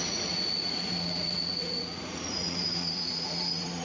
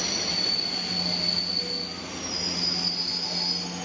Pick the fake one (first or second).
first